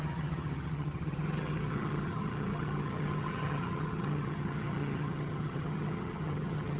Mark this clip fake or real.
fake